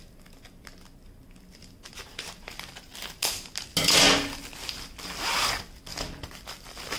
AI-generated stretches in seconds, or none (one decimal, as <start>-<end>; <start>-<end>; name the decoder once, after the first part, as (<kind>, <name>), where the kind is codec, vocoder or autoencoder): 5.9-7.0 (vocoder, BigVGAN v2)